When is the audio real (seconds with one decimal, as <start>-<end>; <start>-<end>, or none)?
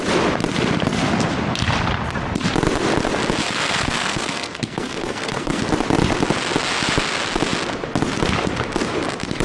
0.0-3.4; 5.6-9.4